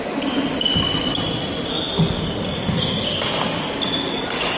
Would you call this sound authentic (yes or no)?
yes